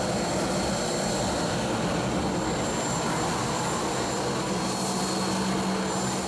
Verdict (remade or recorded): recorded